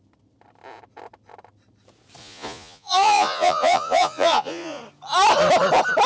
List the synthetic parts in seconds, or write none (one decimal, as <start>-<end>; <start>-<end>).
2.2-4.8